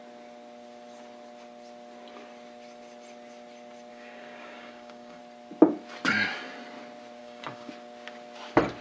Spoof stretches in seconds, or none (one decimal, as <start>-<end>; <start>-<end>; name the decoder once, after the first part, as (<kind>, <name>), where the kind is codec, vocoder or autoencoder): 3.9-5.2 (codec, DAC); 7.2-7.7